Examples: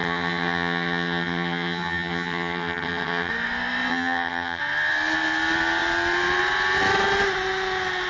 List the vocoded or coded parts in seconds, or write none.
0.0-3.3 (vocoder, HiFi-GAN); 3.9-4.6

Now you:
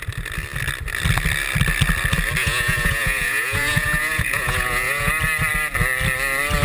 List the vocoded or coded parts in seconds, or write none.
2.4-5.1 (vocoder, Vocos)

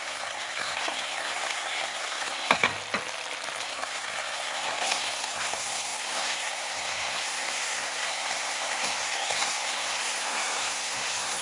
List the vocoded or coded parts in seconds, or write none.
0.0-2.7 (codec, SNAC); 3.6-11.4

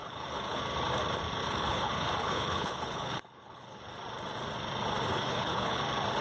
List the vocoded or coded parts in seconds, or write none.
0.0-0.6 (codec, HILCodec); 1.4-3.8; 5.1-5.8

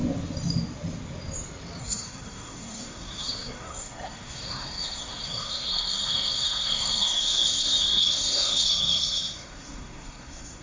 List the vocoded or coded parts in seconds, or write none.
1.8-10.6 (codec, SNAC)

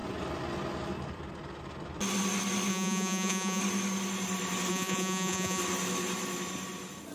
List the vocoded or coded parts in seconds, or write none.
2.7-3.6 (vocoder, Vocos); 4.7-5.6

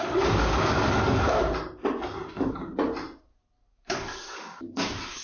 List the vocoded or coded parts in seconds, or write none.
0.0-1.4 (codec, DAC); 2.3-2.7; 3.7-5.2